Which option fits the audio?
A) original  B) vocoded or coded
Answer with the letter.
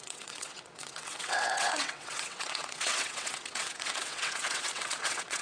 B